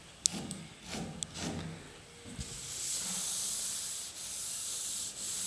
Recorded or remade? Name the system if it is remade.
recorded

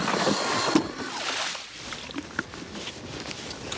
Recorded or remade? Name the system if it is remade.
recorded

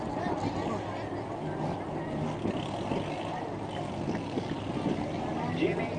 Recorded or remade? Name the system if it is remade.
recorded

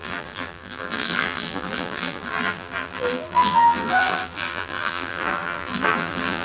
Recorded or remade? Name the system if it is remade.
remade, vocoder, BigVGAN v2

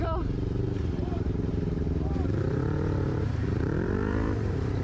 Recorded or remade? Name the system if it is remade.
remade, vocoder, BigVGAN v2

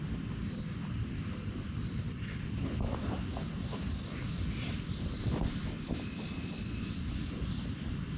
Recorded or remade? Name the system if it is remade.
recorded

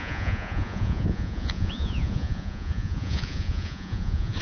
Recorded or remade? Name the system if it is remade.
remade, vocoder, Vocos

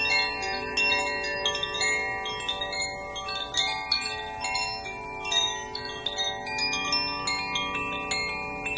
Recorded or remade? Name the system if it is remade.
recorded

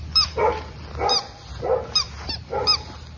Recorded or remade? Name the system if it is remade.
recorded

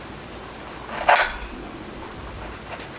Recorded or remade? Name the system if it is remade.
recorded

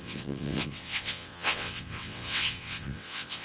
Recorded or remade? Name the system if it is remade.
remade, vocoder, WaveNeXt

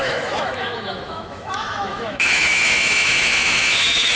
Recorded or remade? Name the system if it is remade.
remade, autoencoder, DAC-VAE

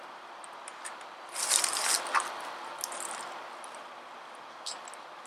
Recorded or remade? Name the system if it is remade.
recorded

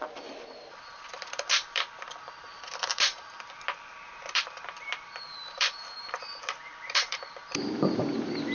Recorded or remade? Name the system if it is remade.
remade, vocoder, BigVGAN v2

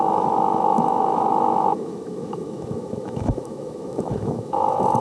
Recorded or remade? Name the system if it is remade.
remade, autoencoder, DAC-VAE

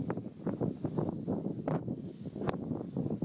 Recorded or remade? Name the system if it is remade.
recorded